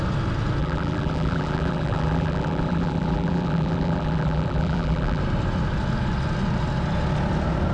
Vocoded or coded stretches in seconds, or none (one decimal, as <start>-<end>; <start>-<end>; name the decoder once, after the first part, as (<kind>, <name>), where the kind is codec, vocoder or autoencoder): 0.6-5.2 (vocoder, BigVGAN v2)